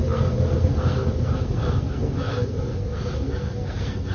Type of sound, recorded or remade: remade